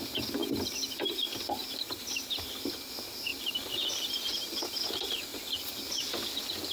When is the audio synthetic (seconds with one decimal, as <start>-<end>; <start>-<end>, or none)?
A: 3.3-4.6; 5.3-6.1